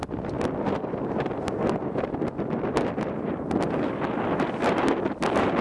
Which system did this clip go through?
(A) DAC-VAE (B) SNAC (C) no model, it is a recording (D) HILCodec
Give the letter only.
C